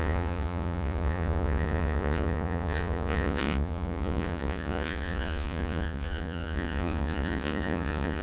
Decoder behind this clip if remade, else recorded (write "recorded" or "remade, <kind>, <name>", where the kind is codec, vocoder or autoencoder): remade, vocoder, Vocos